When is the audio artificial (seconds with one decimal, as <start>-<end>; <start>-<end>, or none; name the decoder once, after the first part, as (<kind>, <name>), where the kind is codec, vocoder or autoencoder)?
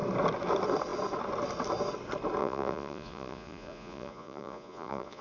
2.4-5.2 (vocoder, Vocos)